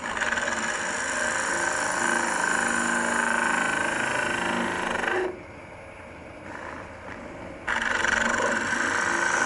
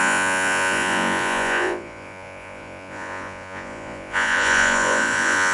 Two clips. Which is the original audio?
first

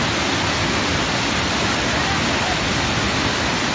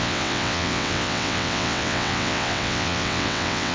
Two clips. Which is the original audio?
first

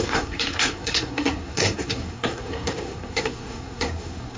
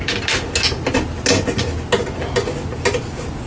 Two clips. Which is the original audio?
second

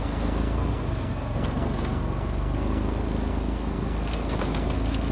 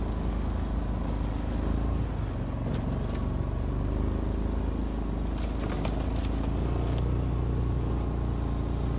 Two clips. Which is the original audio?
second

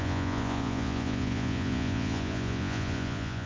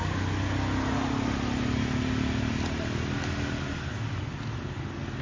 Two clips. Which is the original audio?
second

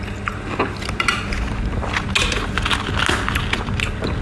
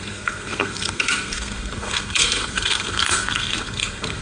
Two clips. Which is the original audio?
first